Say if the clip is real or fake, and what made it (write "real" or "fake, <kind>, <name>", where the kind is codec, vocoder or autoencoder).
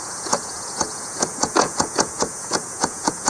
fake, vocoder, Vocos